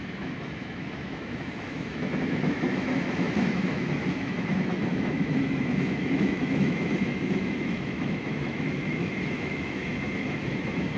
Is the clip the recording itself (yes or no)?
no